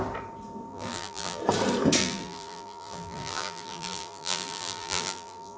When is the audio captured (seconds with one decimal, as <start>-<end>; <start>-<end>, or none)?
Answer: 0.0-0.7; 1.4-2.0